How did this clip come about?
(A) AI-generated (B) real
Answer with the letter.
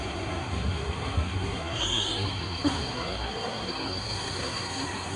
A